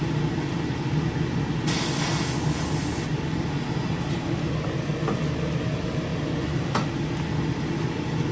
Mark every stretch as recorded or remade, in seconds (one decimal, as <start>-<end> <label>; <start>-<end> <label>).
0.0-8.3 recorded